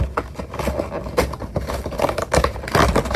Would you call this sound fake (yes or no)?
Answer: no